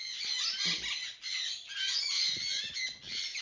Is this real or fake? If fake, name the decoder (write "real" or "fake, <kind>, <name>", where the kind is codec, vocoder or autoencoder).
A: real